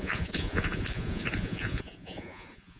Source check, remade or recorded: remade